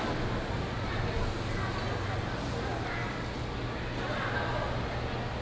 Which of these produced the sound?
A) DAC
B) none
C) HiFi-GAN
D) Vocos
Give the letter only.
B